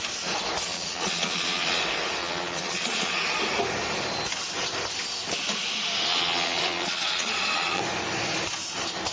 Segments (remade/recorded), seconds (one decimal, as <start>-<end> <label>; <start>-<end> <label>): 0.0-0.7 recorded; 0.7-1.8 remade; 1.8-2.2 recorded; 2.2-3.1 remade; 3.1-6.1 recorded; 6.1-7.8 remade; 7.8-9.1 recorded